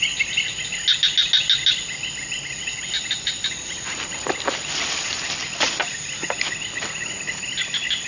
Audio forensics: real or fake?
real